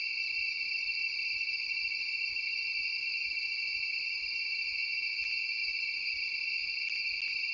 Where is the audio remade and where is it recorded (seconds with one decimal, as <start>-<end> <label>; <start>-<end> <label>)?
0.0-4.8 recorded; 4.8-5.7 remade; 5.7-7.5 recorded